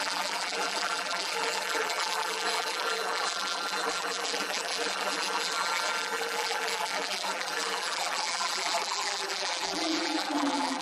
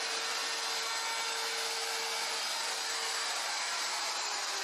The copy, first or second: first